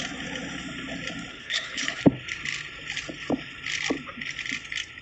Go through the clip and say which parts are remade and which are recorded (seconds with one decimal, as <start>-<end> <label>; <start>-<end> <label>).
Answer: 0.0-1.3 recorded; 1.3-2.0 remade; 2.0-5.0 recorded